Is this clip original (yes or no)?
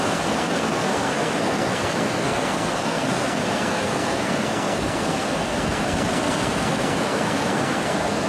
no